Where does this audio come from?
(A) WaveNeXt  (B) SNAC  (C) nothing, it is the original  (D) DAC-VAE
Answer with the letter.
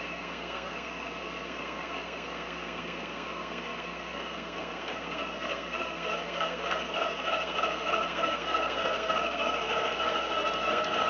B